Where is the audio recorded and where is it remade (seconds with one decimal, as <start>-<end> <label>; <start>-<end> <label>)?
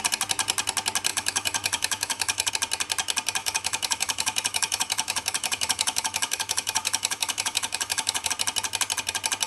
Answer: 0.0-1.1 recorded; 1.1-2.5 remade; 2.5-3.4 recorded; 3.4-8.3 remade; 8.3-9.5 recorded